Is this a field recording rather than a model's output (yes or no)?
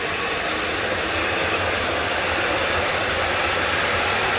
yes